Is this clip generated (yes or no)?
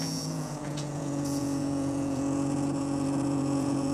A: yes